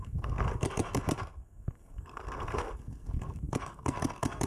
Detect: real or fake fake